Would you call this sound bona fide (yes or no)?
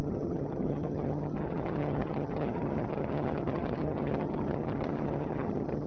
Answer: no